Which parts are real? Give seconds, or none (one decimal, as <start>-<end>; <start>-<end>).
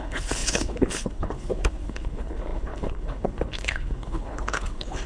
none